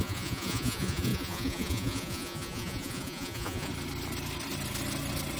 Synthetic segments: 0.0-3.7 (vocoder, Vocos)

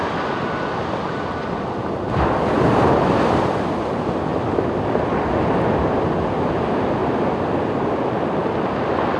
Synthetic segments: none

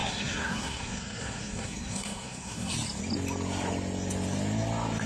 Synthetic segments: 0.0-2.7 (codec, SNAC)